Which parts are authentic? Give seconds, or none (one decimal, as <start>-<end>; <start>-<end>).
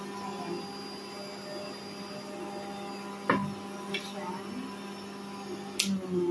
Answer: 0.0-6.3